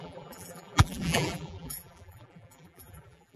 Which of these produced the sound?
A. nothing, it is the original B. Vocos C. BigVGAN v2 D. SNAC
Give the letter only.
C